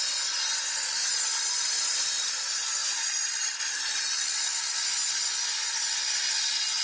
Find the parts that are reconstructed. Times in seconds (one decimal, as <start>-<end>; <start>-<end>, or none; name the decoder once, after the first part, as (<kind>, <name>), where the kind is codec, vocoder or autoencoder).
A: none